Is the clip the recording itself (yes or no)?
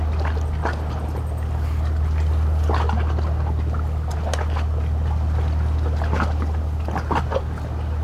yes